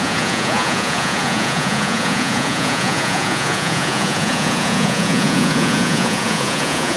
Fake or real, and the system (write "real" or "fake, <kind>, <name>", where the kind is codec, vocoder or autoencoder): fake, vocoder, Vocos